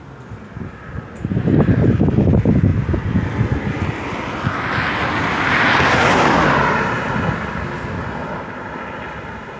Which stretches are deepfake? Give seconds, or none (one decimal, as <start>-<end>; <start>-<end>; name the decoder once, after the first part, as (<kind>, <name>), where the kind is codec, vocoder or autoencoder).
none